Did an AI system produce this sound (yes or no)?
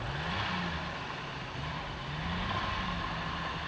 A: no